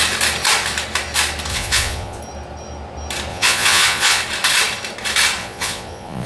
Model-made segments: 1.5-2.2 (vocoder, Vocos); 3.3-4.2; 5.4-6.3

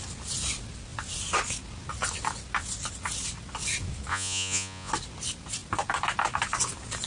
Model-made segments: 4.1-4.9 (vocoder, Vocos)

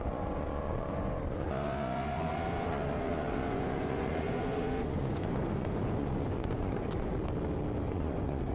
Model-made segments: 0.0-7.1 (vocoder, Vocos); 7.9-8.5

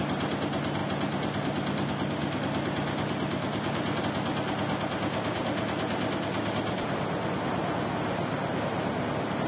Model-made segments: none

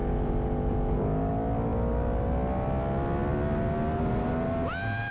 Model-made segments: none

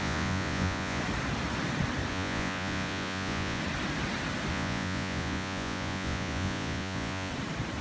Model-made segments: 0.0-1.0 (vocoder, Vocos); 2.1-3.6; 4.5-7.3

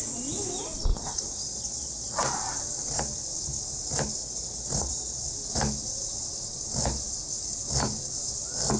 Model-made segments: 0.9-2.1 (vocoder, Vocos); 4.2-5.2